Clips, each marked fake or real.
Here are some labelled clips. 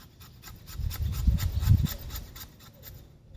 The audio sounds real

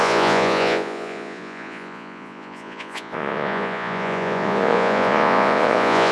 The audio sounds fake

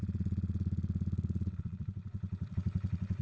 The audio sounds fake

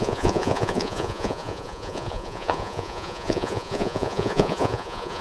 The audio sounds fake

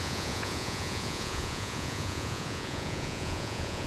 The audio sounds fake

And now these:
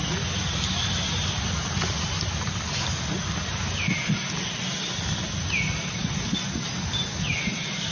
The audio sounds real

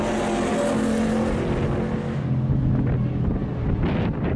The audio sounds real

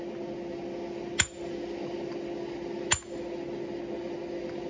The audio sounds real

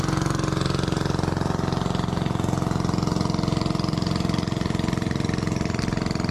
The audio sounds real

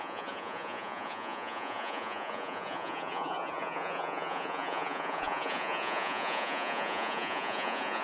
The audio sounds fake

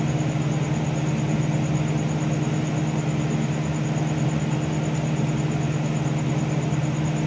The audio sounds real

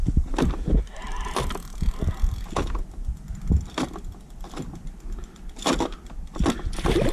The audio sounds real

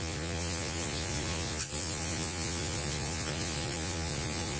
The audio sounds fake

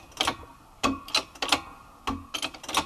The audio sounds real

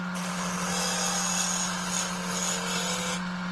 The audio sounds real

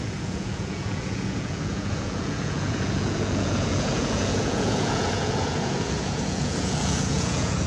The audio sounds fake